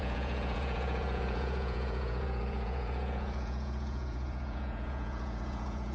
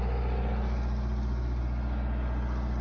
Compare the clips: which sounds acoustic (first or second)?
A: second